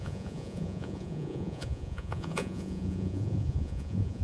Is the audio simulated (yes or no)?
yes